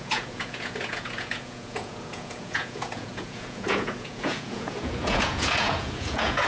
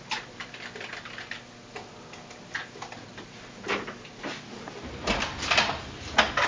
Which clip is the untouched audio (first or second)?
second